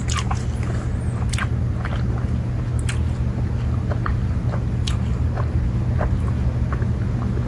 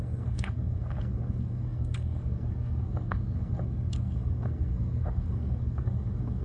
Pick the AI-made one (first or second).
second